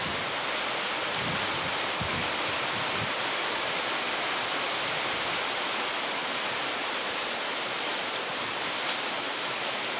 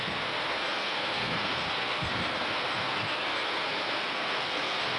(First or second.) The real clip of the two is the first